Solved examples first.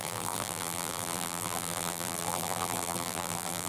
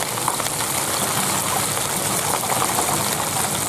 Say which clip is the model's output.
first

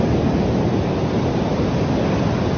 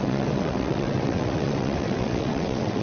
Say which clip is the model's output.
second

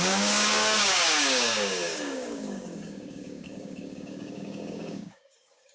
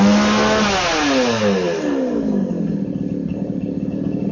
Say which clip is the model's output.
first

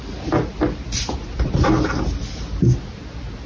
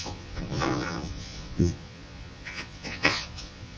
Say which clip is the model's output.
second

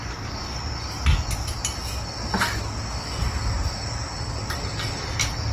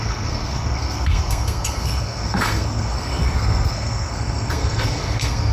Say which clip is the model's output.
second